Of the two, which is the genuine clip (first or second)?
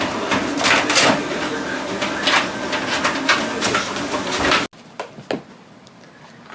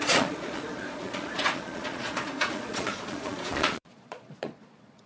first